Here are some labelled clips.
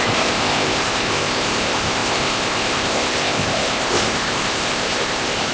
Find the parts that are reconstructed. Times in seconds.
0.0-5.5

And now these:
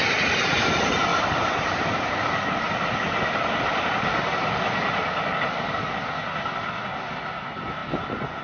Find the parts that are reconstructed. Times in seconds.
none

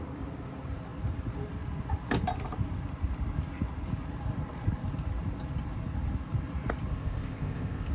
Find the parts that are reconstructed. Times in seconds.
6.9-7.9

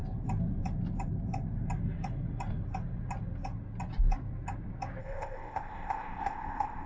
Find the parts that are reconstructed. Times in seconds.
5.0-6.9